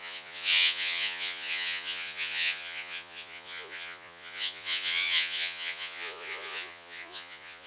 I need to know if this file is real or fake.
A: fake